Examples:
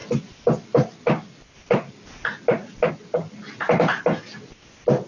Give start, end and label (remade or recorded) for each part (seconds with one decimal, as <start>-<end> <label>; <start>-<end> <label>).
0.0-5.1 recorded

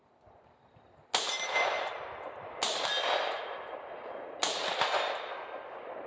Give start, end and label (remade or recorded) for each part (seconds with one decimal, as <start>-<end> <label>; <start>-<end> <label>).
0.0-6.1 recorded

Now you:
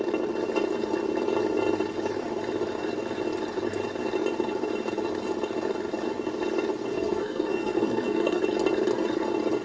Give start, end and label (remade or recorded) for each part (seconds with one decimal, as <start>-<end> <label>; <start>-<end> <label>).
0.0-6.9 recorded; 6.9-8.4 remade; 8.4-9.6 recorded